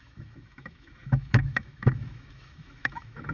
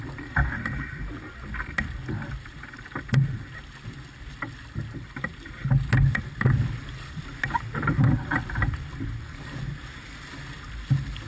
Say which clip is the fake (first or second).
first